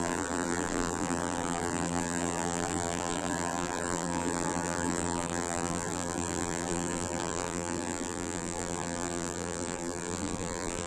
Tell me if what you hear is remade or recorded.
remade